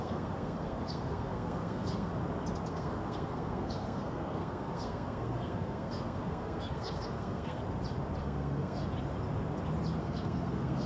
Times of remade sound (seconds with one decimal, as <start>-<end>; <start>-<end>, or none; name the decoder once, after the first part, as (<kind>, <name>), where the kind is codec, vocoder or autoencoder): 0.0-2.1 (codec, SNAC); 2.7-7.6; 8.2-8.8; 10.0-10.9

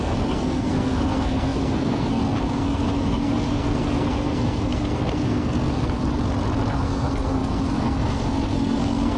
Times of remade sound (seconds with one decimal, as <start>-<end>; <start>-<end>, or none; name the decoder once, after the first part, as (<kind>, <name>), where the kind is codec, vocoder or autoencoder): 0.0-6.0 (codec, SNAC); 6.7-9.2

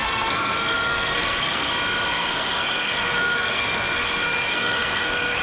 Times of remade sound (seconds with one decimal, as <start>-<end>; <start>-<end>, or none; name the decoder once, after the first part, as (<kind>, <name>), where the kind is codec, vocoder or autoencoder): 0.0-1.7 (codec, SNAC); 2.1-5.4

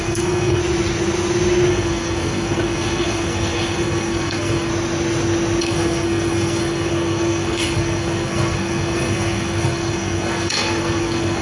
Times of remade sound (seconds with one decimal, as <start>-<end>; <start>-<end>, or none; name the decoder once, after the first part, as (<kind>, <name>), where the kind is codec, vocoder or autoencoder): 0.0-0.6 (codec, SNAC); 1.7-4.7; 5.6-11.4